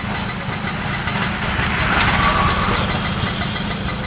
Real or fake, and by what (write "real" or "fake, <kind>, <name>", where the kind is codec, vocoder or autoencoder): real